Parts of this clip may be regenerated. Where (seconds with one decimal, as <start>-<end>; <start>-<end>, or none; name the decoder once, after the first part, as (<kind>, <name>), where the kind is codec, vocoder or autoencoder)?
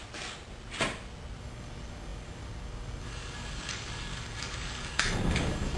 1.4-5.8 (codec, DAC)